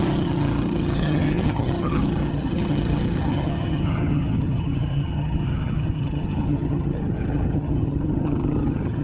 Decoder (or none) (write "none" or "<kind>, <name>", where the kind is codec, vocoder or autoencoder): vocoder, HiFi-GAN